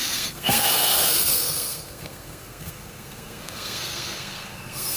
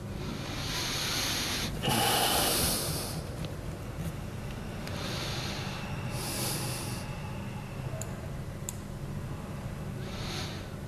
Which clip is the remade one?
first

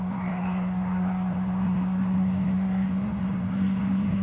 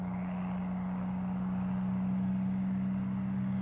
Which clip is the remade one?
first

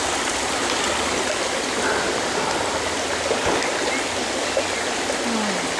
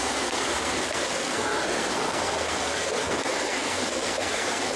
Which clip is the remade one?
second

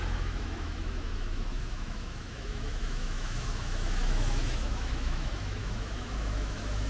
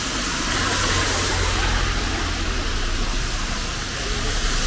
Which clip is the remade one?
first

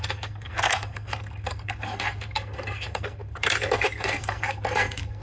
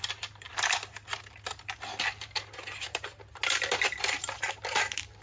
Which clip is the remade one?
first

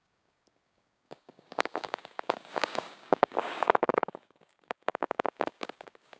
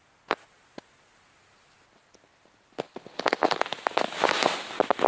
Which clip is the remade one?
first